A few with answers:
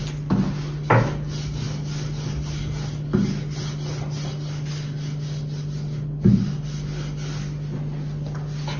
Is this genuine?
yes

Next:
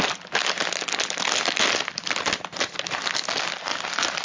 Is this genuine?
yes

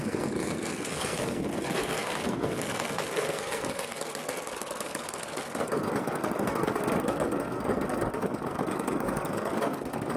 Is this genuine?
no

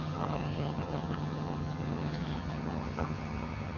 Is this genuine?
no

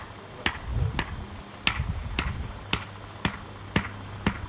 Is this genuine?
yes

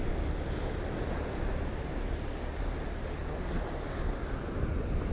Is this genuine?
yes